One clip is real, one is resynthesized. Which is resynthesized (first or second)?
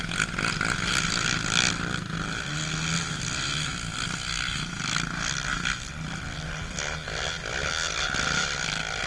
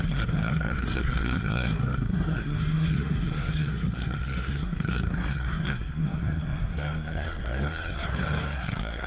second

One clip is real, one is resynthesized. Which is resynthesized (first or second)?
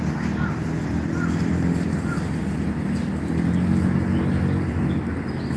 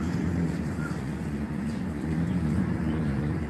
second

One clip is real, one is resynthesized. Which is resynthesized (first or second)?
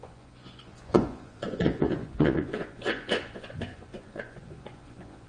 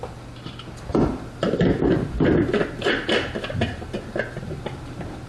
first